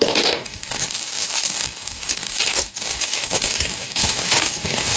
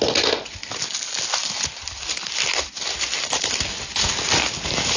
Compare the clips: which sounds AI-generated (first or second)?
first